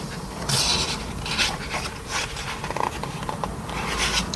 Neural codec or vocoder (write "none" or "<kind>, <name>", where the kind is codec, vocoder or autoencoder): none